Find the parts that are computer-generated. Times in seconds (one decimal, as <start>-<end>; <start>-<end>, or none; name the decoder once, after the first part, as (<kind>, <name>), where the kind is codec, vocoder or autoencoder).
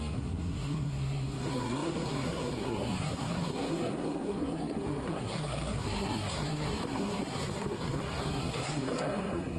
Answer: 0.0-9.6 (codec, SNAC)